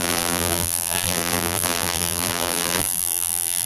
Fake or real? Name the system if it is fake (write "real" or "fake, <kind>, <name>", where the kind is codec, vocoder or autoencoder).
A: fake, vocoder, BigVGAN v2